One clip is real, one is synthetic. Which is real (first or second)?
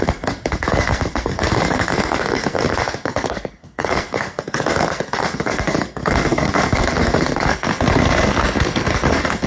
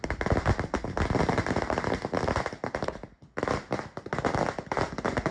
second